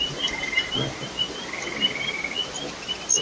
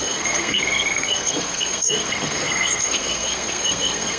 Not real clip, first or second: second